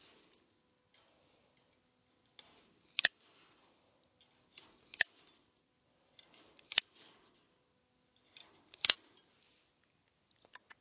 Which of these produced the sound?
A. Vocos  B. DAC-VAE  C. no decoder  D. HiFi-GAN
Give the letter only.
C